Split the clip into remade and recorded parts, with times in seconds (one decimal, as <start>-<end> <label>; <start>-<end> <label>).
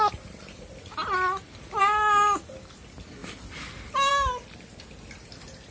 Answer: 0.0-5.7 recorded